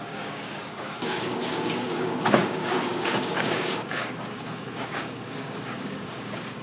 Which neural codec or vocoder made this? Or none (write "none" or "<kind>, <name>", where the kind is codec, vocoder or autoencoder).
codec, DAC